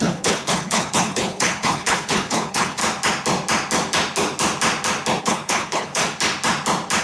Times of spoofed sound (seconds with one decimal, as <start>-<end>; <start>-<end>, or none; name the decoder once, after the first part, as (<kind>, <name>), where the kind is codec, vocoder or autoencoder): 0.0-2.8 (codec, HILCodec); 5.2-6.0